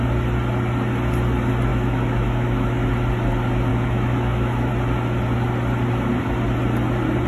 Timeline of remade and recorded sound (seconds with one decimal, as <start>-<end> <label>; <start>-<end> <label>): 0.0-1.7 recorded; 1.7-2.9 remade; 2.9-3.7 recorded; 3.7-4.7 remade; 4.7-7.3 recorded